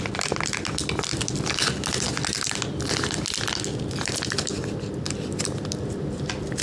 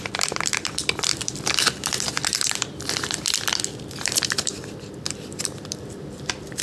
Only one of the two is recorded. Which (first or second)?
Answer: first